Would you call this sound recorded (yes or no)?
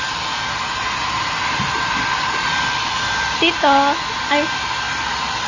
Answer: yes